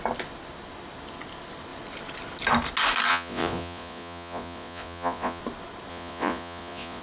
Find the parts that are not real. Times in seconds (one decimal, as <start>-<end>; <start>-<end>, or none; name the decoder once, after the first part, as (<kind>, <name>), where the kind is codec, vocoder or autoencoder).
3.1-5.4 (vocoder, Vocos); 5.9-7.0